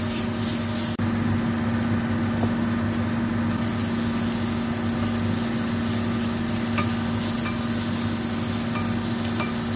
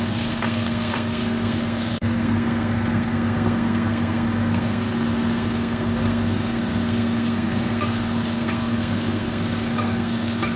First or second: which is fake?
second